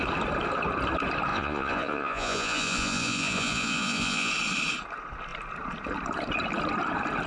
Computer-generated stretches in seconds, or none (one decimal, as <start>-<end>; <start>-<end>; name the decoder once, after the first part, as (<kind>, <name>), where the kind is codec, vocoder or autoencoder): 1.3-4.3 (vocoder, Vocos)